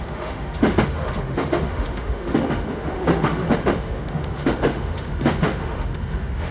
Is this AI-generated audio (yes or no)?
yes